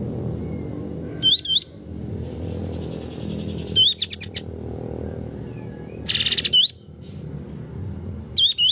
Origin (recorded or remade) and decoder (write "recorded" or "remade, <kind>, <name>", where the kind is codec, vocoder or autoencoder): recorded